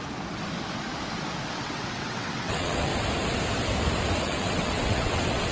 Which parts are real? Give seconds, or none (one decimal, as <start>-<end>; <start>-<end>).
0.0-1.5; 2.9-4.2